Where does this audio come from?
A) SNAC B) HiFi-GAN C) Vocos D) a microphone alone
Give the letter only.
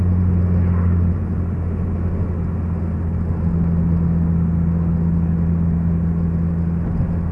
D